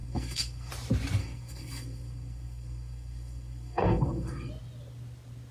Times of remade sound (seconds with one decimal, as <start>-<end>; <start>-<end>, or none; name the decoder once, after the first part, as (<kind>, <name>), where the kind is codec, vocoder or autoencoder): 0.0-0.7 (codec, SNAC); 1.2-4.5